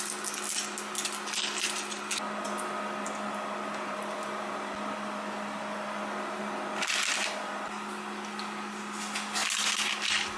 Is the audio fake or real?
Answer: real